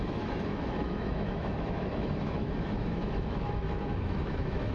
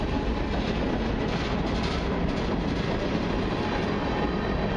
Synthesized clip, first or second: first